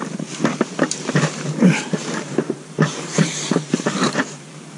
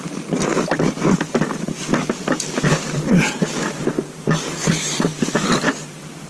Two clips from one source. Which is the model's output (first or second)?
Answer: first